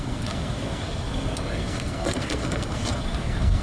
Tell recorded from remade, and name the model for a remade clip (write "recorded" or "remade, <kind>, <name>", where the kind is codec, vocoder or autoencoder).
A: remade, codec, SNAC